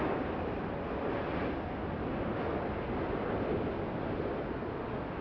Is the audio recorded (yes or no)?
yes